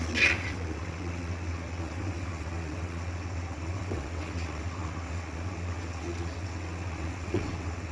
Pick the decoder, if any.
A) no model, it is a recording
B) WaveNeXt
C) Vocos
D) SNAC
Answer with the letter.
B